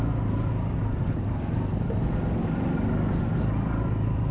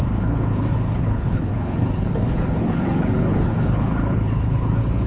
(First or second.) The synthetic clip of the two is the second